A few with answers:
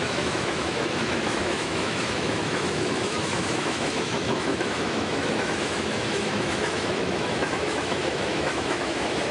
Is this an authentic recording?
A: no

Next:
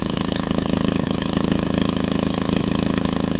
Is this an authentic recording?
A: no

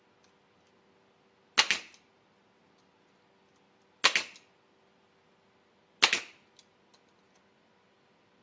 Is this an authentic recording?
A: yes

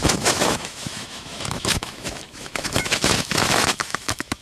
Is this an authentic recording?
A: no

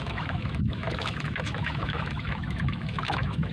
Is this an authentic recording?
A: no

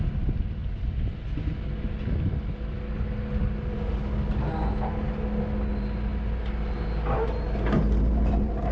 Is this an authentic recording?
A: yes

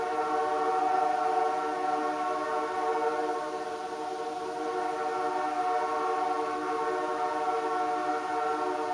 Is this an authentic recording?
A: yes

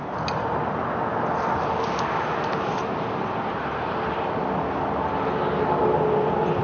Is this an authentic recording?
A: yes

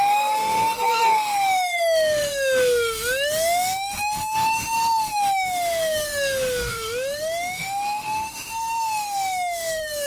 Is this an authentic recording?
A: no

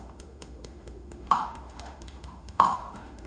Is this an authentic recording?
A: no